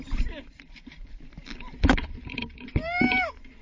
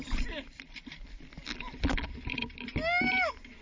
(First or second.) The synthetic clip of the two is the first